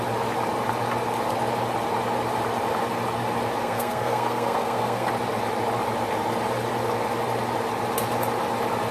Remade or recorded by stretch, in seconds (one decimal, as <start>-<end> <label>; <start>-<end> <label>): 0.0-3.6 recorded; 3.6-5.1 remade; 5.1-8.9 recorded